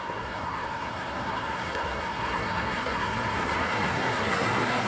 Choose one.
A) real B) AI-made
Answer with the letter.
B